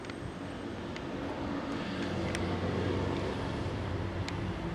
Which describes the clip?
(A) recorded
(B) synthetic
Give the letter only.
A